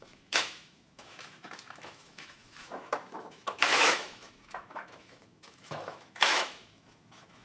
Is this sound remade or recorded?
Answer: remade